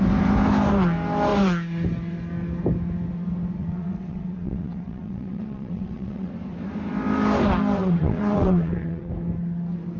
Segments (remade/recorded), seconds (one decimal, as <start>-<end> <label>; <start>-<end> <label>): 0.0-3.6 recorded; 3.6-6.3 remade; 6.3-7.8 recorded; 7.8-9.1 remade; 9.1-10.0 recorded